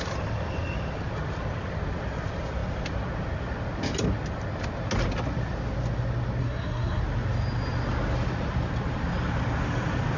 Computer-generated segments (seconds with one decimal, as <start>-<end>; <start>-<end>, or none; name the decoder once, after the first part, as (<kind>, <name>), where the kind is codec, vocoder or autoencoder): 6.4-7.0 (codec, SNAC)